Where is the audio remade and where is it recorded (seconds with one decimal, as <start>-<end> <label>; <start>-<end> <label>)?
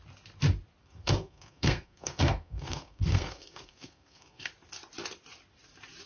0.0-0.8 recorded; 0.8-4.5 remade; 4.5-6.1 recorded